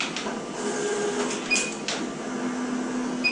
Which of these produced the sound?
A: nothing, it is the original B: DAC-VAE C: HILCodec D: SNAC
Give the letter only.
A